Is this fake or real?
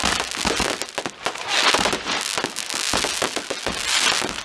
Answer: real